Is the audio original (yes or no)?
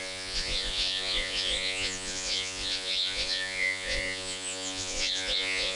no